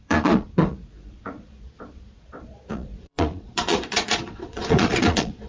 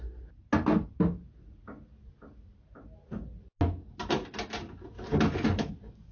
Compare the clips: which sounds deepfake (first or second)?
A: first